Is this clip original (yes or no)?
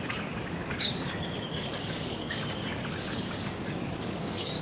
no